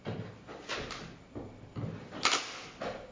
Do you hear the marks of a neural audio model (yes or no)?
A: no